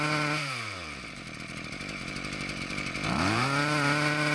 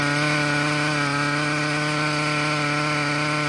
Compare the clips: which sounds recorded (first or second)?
second